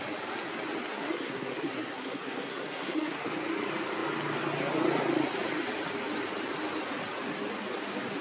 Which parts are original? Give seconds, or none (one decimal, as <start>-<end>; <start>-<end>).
0.0-0.9; 3.3-8.2